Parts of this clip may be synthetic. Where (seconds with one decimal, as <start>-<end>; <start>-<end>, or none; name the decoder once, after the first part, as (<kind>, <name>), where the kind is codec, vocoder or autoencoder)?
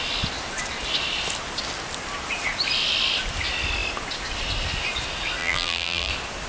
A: 5.4-6.1 (vocoder, BigVGAN v2)